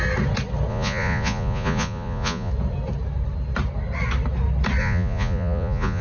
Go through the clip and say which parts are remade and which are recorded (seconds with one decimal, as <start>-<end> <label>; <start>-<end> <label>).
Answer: 0.0-0.7 recorded; 0.7-2.5 remade; 2.5-4.8 recorded; 4.8-6.0 remade